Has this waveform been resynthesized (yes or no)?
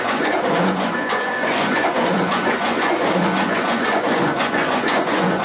yes